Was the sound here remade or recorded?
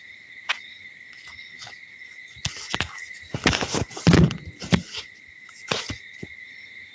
recorded